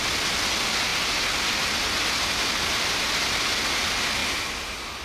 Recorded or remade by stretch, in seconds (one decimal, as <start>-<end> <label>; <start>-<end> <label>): 0.0-5.0 recorded